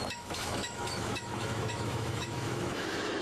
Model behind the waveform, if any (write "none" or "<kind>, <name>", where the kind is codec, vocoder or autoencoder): autoencoder, DAC-VAE